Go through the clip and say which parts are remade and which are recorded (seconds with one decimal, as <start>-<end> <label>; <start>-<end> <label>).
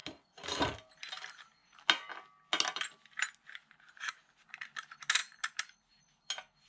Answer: 0.0-6.7 recorded